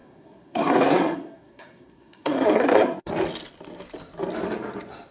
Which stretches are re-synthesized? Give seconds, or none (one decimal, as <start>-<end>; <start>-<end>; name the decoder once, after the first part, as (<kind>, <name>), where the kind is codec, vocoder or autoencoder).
0.0-3.1 (codec, SNAC)